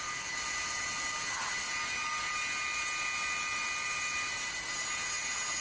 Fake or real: real